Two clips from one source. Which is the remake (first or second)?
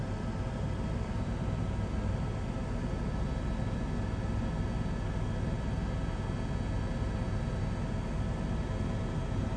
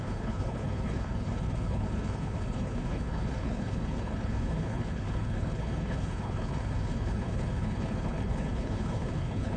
second